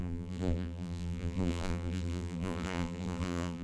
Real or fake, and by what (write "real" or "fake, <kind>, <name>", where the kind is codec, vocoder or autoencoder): fake, vocoder, BigVGAN v2